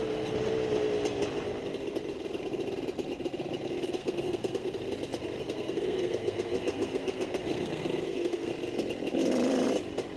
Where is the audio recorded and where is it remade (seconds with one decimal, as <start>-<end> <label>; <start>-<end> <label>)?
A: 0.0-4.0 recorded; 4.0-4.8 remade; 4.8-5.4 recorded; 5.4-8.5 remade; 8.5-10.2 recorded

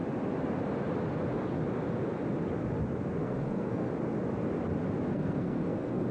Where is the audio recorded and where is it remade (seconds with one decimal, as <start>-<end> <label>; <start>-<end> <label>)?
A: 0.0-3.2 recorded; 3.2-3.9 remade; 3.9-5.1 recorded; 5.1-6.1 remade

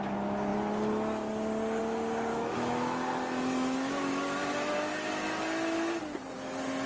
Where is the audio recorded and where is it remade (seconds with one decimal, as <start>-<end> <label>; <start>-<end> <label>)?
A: 0.0-2.3 recorded; 2.3-4.4 remade; 4.4-6.9 recorded